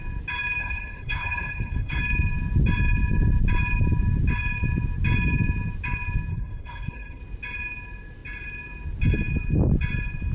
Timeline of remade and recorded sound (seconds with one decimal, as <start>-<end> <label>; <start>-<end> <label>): 0.0-0.6 recorded; 0.6-2.0 remade; 2.0-6.3 recorded; 6.3-7.2 remade; 7.2-10.3 recorded